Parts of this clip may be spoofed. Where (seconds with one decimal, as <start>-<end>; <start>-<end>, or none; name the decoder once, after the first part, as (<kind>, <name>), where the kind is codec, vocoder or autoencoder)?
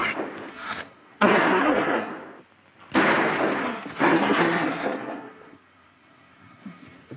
0.5-2.1 (codec, SNAC); 3.6-7.2